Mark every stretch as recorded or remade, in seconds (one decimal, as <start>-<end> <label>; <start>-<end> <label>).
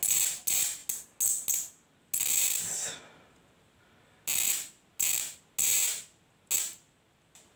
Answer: 0.0-7.6 recorded